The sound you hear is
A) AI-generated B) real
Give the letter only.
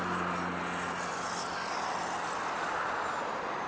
B